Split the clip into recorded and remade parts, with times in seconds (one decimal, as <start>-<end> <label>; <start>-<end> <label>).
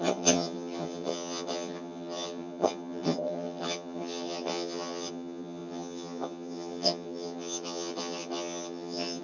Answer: 0.0-9.2 remade